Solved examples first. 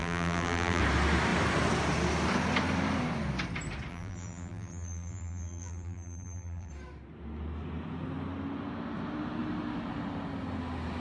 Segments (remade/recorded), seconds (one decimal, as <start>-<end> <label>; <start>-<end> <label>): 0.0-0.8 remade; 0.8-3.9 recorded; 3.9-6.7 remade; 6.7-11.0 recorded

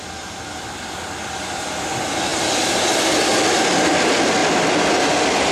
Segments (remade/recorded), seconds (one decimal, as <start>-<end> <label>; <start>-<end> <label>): 0.0-5.5 recorded

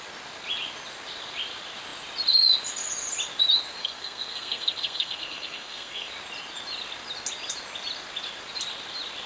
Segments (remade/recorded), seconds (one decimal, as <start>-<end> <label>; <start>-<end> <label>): 0.0-3.8 recorded; 3.8-6.1 remade; 6.1-9.3 recorded